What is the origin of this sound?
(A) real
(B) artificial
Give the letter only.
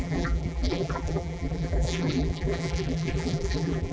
B